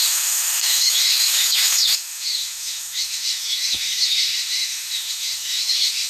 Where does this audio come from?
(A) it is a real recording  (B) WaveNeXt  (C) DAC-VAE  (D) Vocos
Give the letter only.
C